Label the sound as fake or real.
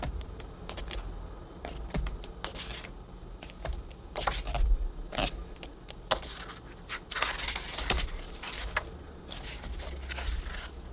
real